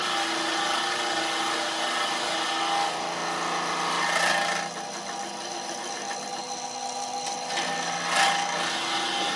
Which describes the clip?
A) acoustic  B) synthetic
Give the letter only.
A